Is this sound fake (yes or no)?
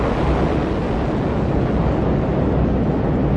no